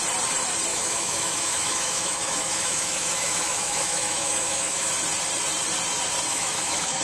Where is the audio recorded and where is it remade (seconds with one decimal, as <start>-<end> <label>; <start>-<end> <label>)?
0.0-0.7 recorded; 0.7-4.9 remade; 4.9-6.3 recorded; 6.3-7.0 remade